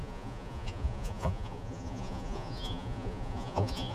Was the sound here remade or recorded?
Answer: remade